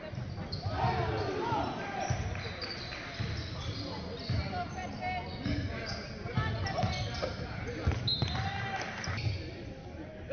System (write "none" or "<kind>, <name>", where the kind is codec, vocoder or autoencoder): none